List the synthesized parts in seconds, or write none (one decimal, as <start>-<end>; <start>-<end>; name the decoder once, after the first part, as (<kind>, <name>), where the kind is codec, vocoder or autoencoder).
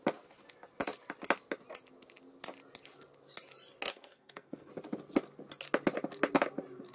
3.9-4.7 (codec, SNAC)